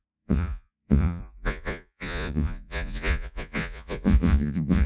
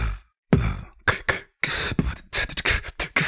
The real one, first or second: second